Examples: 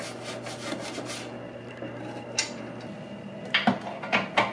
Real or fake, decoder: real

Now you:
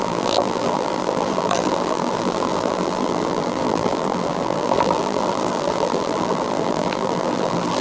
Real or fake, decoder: fake, vocoder, BigVGAN v2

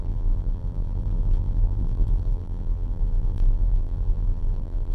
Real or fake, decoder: fake, vocoder, BigVGAN v2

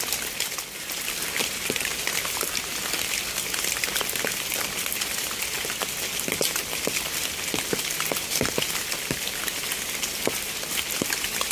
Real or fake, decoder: real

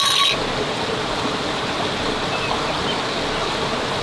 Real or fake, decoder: real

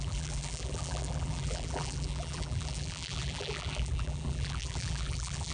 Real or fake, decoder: fake, vocoder, BigVGAN v2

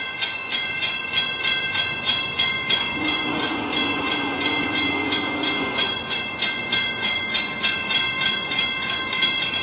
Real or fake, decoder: fake, vocoder, Vocos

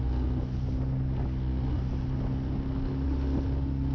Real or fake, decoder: real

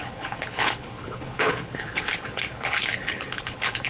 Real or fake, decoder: fake, codec, HILCodec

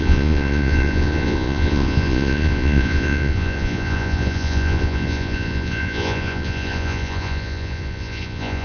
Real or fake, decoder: fake, vocoder, Vocos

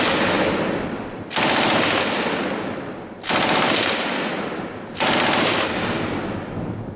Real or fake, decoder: real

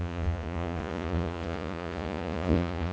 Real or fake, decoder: fake, vocoder, Vocos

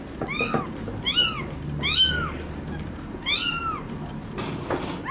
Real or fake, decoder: real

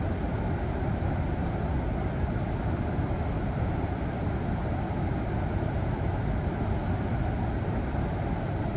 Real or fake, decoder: real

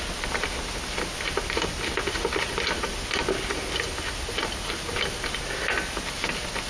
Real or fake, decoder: real